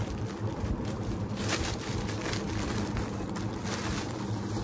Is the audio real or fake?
fake